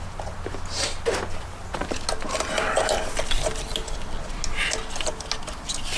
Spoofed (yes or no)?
no